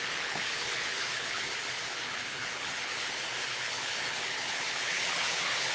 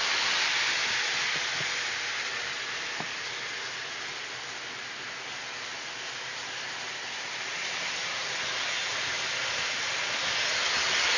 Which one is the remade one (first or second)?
first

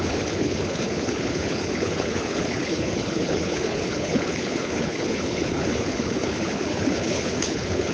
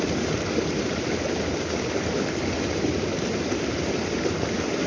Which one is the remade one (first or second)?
first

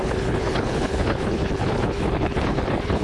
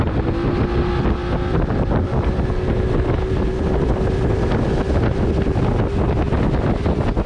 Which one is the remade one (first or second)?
first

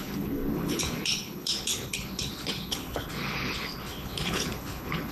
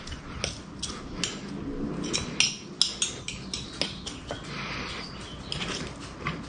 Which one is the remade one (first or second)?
first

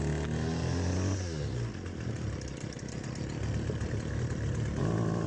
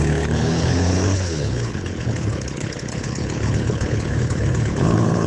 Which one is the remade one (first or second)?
second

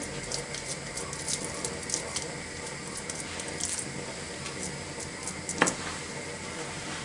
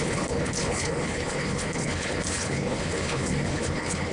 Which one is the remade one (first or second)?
second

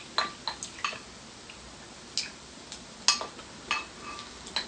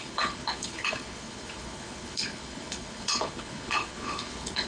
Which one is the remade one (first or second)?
second